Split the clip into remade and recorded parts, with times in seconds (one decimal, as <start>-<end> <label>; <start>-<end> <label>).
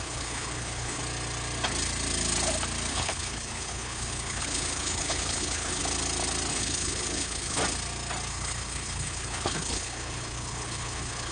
0.0-1.0 remade; 1.0-2.9 recorded; 2.9-5.8 remade; 5.8-6.5 recorded; 6.5-7.6 remade; 7.6-8.3 recorded; 8.3-11.3 remade